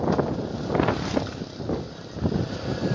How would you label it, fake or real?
real